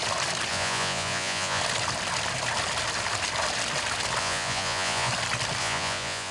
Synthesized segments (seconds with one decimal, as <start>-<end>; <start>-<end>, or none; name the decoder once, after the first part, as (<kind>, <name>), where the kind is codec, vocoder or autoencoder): 0.5-1.6 (vocoder, Vocos); 4.2-5.1; 5.6-6.3